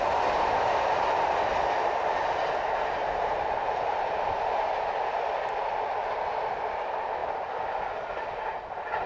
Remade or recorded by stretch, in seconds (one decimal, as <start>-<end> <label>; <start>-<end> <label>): 0.0-3.0 recorded; 3.0-3.9 remade; 3.9-9.1 recorded